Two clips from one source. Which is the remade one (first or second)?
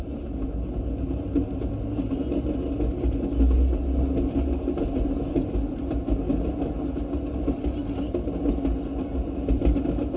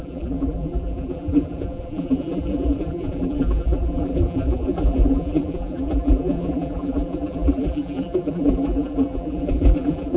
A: second